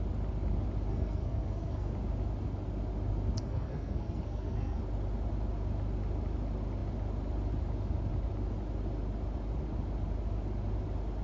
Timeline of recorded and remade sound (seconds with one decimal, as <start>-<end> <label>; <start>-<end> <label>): 0.0-0.9 recorded; 0.9-1.9 remade; 1.9-3.4 recorded; 3.4-4.8 remade; 4.8-11.2 recorded